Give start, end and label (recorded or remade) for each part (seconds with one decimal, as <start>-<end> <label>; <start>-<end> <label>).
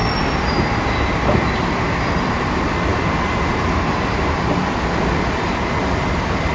0.0-6.5 recorded